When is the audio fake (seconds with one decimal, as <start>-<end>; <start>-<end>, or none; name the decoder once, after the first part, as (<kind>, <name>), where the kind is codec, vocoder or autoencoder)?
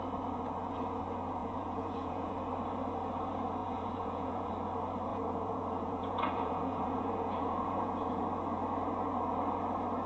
1.4-2.3 (vocoder, Vocos); 3.6-4.5; 5.1-8.2